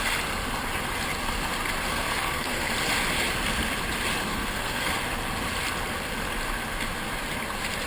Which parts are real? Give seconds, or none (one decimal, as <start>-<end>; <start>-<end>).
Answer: 0.0-1.9; 2.7-4.3; 4.9-7.9